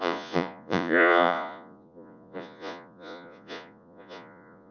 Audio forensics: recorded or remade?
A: remade